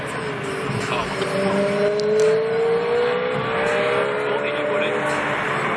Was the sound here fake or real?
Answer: real